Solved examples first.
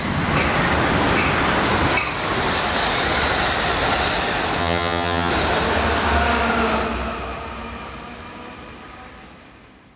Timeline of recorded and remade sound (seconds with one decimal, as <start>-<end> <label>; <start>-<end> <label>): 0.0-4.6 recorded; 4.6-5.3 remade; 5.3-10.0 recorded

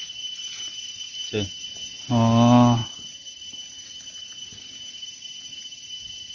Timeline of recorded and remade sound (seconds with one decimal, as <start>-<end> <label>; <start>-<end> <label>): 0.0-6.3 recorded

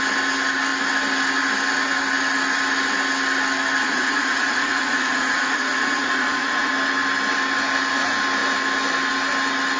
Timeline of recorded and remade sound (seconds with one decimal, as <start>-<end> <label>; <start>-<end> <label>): 0.0-3.8 recorded; 3.8-6.7 remade; 6.7-9.8 recorded

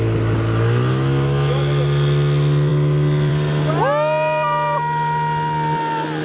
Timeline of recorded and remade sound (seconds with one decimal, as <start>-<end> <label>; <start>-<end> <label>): 0.0-6.2 recorded

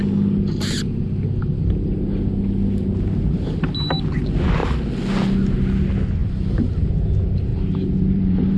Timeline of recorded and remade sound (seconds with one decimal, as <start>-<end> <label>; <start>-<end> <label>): 0.0-6.2 recorded; 6.2-6.9 remade; 6.9-7.5 recorded; 7.5-8.6 remade

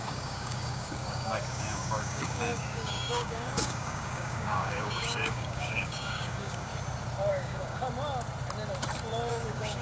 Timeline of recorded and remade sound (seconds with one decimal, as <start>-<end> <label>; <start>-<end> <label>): 0.0-6.7 remade; 6.7-7.3 recorded; 7.3-7.9 remade; 7.9-9.3 recorded; 9.3-9.8 remade